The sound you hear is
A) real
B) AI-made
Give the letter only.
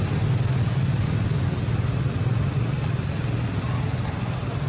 A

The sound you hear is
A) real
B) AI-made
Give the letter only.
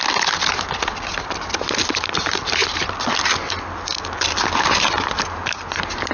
A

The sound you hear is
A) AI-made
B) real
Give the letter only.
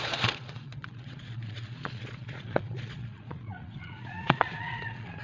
A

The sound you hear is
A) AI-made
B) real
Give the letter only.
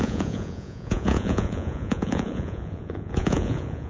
A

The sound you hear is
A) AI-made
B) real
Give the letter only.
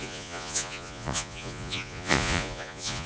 A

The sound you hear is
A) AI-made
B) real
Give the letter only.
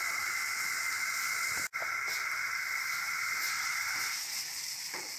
B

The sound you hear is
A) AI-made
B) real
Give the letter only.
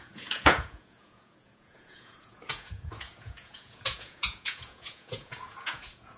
A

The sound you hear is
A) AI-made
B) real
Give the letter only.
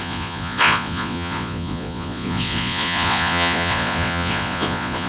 A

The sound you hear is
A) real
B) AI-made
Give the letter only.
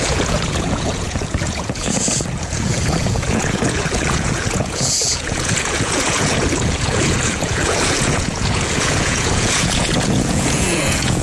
B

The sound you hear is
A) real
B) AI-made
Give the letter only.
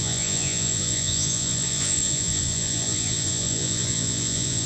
B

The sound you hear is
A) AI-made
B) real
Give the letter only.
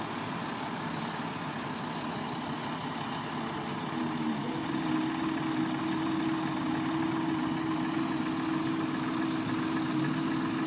B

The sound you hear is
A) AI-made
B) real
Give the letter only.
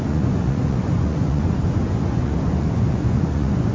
A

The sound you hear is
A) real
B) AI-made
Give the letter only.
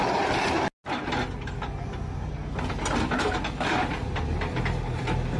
A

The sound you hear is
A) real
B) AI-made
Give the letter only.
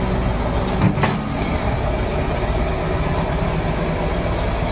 A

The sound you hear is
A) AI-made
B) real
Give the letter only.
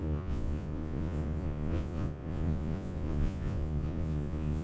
A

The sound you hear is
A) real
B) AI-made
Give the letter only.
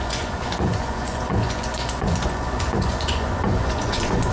B